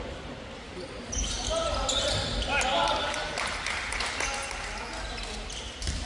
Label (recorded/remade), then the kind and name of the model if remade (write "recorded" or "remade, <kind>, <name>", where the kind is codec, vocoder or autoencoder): recorded